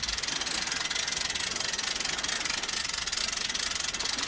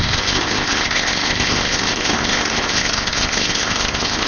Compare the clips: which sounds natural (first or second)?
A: first